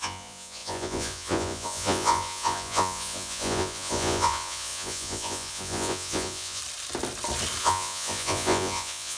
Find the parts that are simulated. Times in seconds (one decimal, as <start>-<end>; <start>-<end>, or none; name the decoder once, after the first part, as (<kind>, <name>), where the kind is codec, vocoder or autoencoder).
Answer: 0.0-6.6 (vocoder, Vocos); 7.6-9.2